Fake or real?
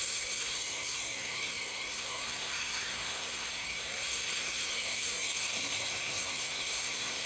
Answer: fake